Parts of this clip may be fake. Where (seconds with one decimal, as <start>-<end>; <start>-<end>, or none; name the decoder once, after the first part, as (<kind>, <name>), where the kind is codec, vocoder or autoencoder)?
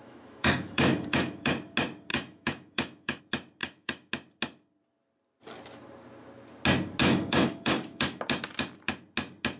0.0-1.5 (autoencoder, DAC-VAE); 2.1-3.2; 3.6-4.1; 7.0-8.2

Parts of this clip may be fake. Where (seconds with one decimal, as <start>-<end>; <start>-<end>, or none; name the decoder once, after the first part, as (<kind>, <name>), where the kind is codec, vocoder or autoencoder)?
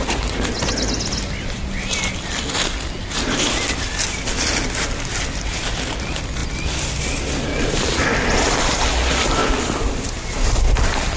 none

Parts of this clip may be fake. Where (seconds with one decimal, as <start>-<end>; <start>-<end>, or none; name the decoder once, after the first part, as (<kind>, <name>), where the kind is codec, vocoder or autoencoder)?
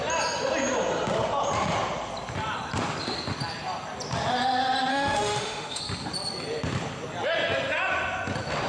4.9-5.8 (autoencoder, DAC-VAE)